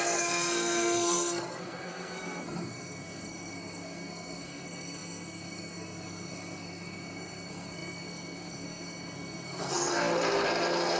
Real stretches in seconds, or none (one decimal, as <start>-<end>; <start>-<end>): 10.1-11.0